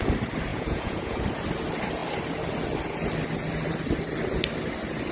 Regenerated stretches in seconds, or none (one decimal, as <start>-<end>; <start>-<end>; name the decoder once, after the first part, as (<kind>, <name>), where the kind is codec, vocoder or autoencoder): 0.5-1.2 (vocoder, Vocos)

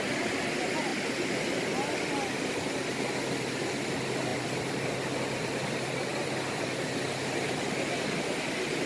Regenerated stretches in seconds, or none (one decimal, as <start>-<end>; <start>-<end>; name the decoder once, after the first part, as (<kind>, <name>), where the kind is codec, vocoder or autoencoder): 4.3-4.9 (vocoder, BigVGAN v2)

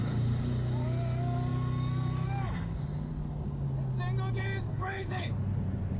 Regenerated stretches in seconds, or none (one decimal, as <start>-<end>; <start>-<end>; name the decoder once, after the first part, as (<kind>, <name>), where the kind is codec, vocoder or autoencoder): 4.7-5.3 (codec, HILCodec)

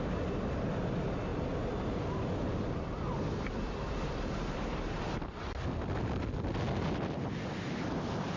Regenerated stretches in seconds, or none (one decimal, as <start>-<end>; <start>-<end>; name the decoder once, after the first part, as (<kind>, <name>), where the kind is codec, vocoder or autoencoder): none

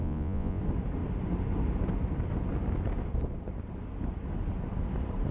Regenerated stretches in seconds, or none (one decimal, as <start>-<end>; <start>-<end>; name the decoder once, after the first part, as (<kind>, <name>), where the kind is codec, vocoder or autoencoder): 0.0-0.6 (vocoder, Vocos)